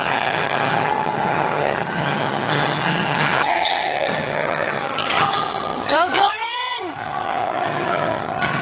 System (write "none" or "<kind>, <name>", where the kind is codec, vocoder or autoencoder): vocoder, HiFi-GAN